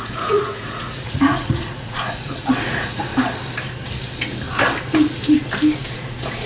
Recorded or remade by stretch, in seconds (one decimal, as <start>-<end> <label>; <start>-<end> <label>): 0.0-3.1 remade; 3.1-6.5 recorded